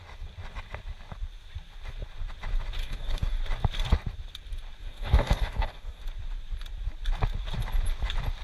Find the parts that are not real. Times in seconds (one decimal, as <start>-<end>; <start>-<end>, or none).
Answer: 2.8-3.4; 4.8-6.0